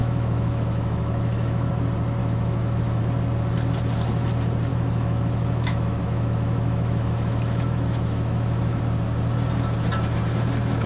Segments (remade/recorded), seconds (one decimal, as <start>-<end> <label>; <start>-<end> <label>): 0.0-1.7 remade; 1.7-2.2 recorded; 2.2-3.0 remade; 3.0-4.7 recorded; 4.7-8.8 remade; 8.8-10.9 recorded